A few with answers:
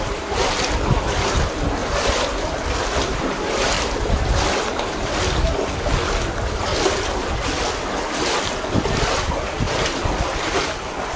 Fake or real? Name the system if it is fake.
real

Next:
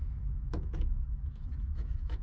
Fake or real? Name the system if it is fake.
fake, autoencoder, DAC-VAE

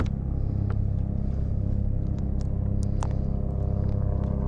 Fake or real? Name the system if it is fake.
real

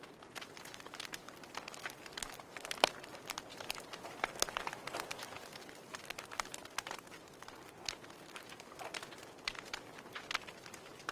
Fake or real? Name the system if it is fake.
real